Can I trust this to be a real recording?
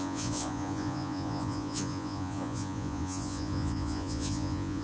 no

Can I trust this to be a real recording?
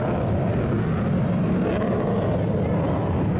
yes